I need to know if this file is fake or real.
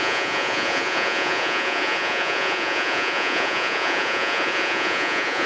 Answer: fake